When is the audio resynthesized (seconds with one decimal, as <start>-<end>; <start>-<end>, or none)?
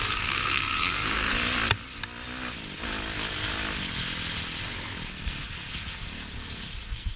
0.0-1.3; 5.1-7.2